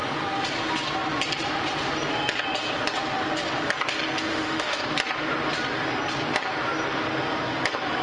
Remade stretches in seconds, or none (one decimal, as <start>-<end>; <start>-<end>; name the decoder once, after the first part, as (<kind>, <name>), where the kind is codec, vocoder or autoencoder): 4.3-4.8 (autoencoder, DAC-VAE)